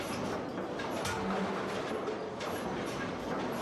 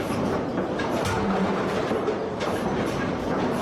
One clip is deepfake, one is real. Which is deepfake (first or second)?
second